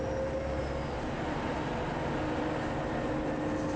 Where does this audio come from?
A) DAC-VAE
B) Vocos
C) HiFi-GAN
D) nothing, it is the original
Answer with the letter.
D